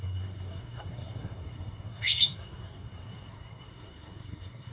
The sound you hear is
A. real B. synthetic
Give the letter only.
B